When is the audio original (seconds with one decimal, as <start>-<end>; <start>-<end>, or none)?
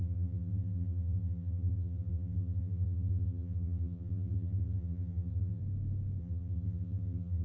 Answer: 5.6-6.2